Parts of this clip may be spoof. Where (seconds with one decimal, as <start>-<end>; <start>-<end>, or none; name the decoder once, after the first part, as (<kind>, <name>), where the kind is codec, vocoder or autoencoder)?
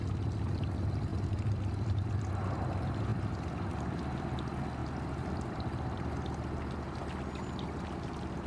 1.1-2.3 (vocoder, BigVGAN v2); 4.8-6.1